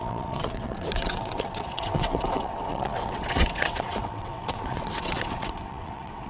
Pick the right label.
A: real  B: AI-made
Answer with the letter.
B